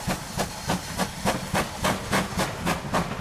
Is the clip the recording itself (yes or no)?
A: yes